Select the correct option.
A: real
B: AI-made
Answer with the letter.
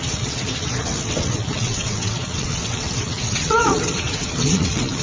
B